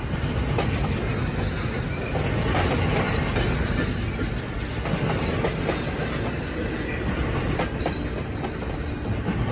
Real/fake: real